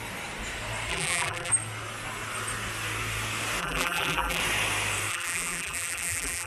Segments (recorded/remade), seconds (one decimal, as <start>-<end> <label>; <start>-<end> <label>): 0.0-0.9 recorded; 0.9-1.5 remade; 1.5-3.6 recorded; 3.6-4.4 remade; 4.4-5.1 recorded; 5.1-6.5 remade